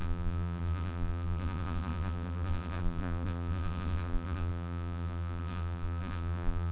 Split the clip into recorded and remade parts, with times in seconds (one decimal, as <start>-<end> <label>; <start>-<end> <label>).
0.0-6.7 remade